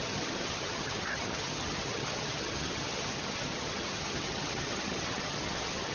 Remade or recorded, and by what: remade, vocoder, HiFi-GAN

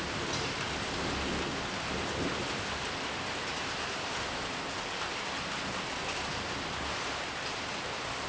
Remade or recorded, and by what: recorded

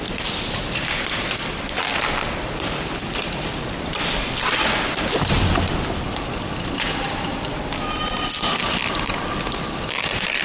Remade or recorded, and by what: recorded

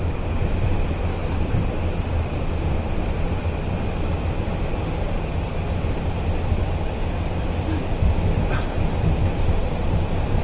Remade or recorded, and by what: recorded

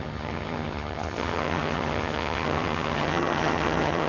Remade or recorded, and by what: remade, vocoder, HiFi-GAN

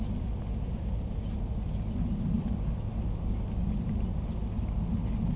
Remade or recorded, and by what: recorded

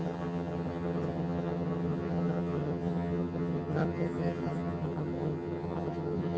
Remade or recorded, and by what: remade, vocoder, HiFi-GAN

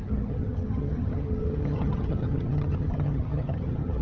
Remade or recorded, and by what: remade, vocoder, HiFi-GAN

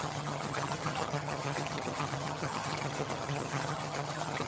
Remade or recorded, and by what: remade, vocoder, HiFi-GAN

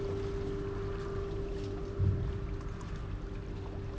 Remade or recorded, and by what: recorded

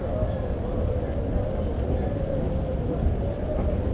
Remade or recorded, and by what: recorded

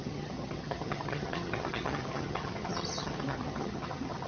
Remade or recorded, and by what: remade, vocoder, HiFi-GAN